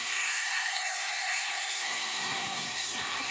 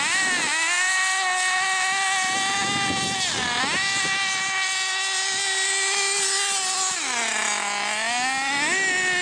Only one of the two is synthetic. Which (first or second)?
first